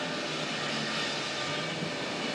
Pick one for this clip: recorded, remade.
recorded